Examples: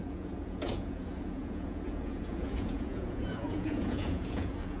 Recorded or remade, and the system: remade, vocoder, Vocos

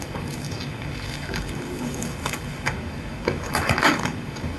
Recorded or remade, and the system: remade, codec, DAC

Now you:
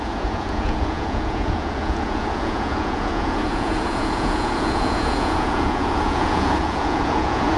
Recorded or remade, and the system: remade, vocoder, Vocos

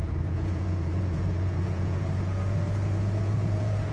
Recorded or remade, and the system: remade, vocoder, Vocos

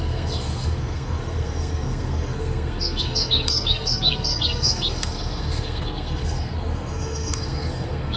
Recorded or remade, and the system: remade, codec, SNAC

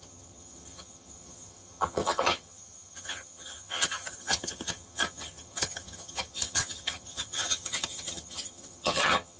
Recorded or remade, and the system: remade, vocoder, HiFi-GAN